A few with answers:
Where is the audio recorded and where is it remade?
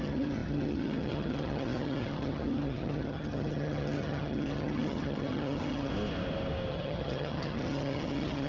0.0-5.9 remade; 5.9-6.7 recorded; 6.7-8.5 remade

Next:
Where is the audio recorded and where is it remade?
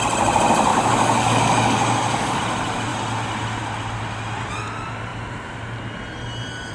0.0-0.7 recorded; 0.7-2.4 remade; 2.4-6.7 recorded